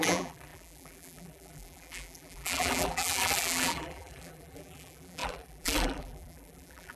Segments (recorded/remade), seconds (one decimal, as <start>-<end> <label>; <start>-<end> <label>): 0.0-7.0 remade